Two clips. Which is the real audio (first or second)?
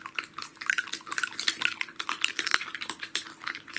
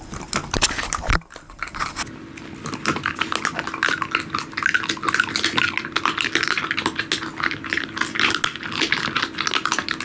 second